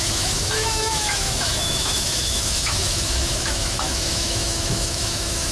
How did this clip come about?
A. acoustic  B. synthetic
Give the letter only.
B